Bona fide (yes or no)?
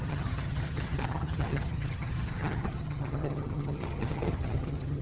no